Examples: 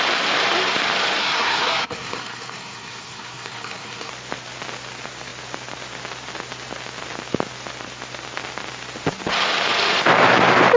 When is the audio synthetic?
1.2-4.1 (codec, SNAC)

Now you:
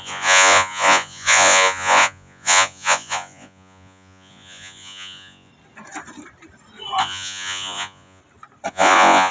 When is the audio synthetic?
0.0-5.5 (vocoder, Vocos); 7.0-8.2; 8.7-9.3